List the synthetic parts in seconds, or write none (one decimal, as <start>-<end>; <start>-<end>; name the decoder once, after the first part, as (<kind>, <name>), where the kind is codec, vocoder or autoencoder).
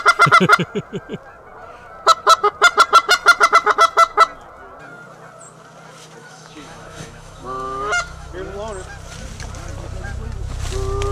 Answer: 6.2-8.3 (autoencoder, DAC-VAE)